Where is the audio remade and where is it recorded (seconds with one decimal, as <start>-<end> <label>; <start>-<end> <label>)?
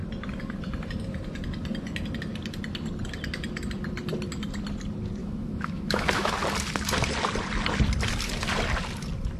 0.0-5.2 recorded; 5.2-6.3 remade; 6.3-9.4 recorded